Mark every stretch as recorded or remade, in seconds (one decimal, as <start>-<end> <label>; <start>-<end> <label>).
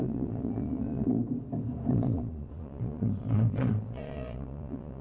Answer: 0.0-1.2 remade; 1.2-1.9 recorded; 1.9-5.0 remade